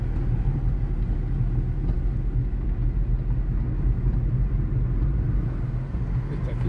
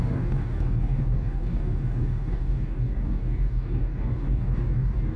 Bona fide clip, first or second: first